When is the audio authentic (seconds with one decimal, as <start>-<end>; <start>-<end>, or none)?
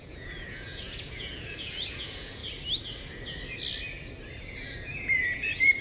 2.4-4.4